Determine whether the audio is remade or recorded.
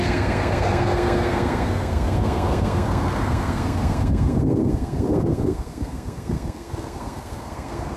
remade